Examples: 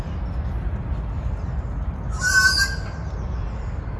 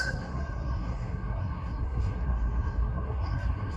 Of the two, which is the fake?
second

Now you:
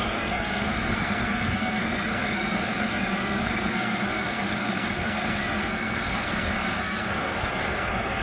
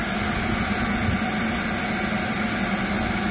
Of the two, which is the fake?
first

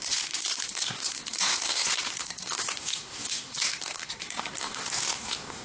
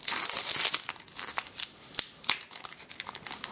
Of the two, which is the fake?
first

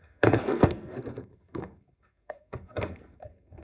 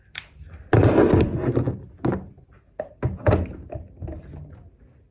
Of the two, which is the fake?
first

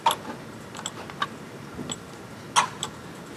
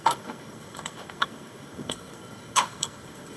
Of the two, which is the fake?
second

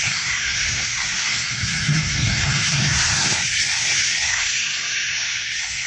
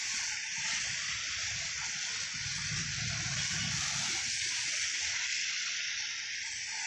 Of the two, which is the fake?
first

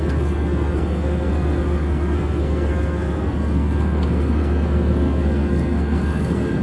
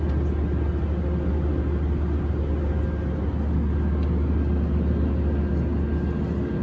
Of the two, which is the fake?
first